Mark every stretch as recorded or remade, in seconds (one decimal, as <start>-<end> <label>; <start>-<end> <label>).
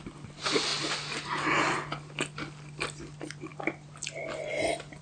0.0-5.0 recorded